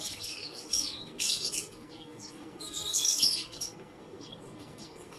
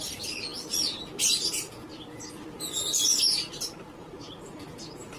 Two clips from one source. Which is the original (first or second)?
second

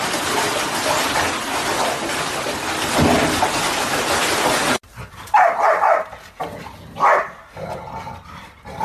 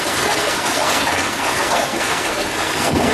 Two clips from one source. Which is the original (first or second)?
first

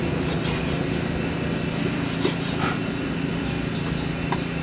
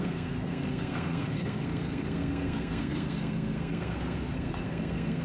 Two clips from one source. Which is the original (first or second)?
first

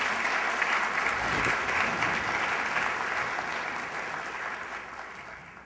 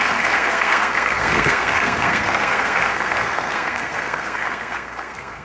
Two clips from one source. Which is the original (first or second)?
first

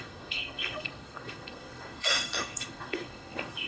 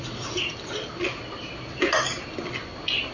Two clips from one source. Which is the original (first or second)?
second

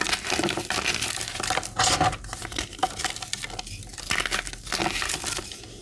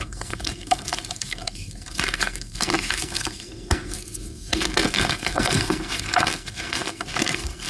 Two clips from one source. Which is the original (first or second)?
first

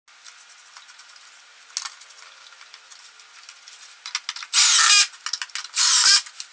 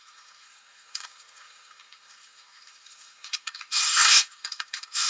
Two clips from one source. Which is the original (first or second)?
first